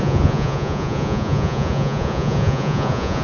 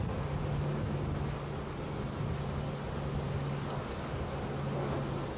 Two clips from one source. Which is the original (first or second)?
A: second